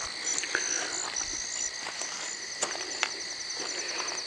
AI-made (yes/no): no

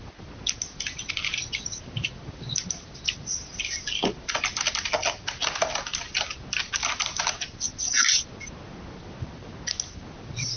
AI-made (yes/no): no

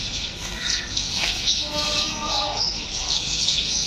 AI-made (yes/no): yes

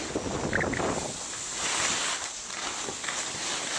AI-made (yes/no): no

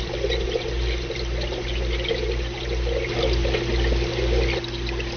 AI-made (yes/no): no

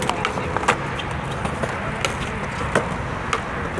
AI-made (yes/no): no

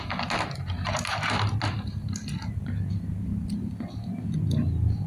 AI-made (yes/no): no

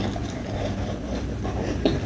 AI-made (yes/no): no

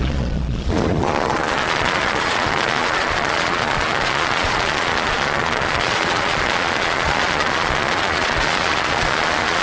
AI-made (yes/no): yes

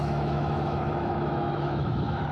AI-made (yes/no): yes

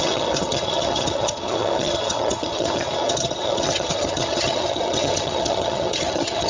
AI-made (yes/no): yes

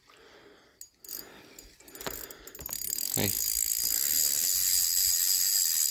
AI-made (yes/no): no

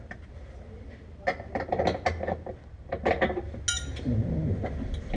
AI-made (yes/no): no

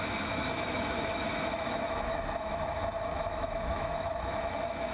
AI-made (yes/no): yes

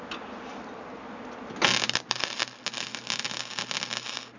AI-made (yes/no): no